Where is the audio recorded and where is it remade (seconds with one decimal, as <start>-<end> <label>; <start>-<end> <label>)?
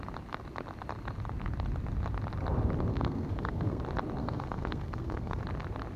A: 0.0-2.9 recorded; 2.9-3.8 remade; 3.8-4.2 recorded; 4.2-5.4 remade; 5.4-6.0 recorded